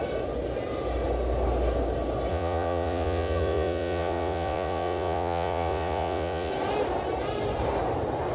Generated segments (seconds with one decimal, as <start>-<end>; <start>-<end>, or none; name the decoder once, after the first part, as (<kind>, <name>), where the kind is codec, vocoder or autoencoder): 2.3-6.5 (vocoder, Vocos)